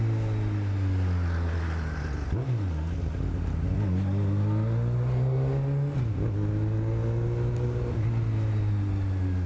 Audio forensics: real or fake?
real